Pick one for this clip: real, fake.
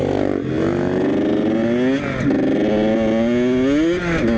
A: real